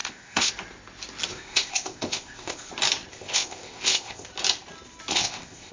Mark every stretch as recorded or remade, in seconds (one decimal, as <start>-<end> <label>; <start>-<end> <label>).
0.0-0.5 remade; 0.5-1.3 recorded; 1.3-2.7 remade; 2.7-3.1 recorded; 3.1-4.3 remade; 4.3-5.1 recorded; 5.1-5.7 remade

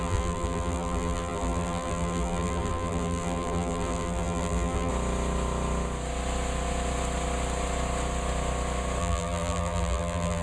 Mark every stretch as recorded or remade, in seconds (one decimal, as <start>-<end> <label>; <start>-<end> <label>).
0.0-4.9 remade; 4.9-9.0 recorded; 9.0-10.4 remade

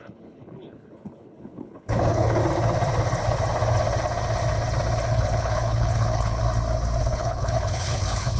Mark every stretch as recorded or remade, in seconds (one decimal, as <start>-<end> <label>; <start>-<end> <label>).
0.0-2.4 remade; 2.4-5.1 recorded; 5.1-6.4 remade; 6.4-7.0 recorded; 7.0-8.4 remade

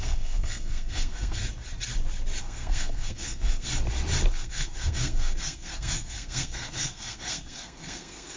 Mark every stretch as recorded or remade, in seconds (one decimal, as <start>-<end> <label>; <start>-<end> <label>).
0.0-1.4 remade; 1.4-2.4 recorded; 2.4-3.7 remade; 3.7-4.3 recorded; 4.3-8.4 remade

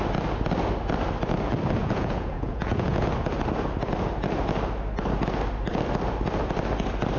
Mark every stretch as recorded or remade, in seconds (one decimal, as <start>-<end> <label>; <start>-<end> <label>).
0.0-1.8 recorded; 1.8-3.1 remade; 3.1-7.2 recorded